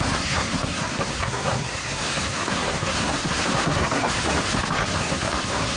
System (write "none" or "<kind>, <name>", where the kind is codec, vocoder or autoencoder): codec, SNAC